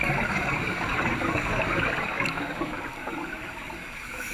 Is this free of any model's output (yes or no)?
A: no